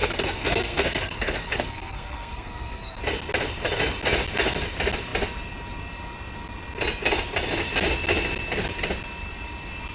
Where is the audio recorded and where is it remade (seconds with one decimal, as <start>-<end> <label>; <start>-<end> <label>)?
0.0-3.0 remade; 3.0-9.9 recorded